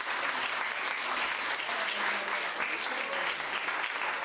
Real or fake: real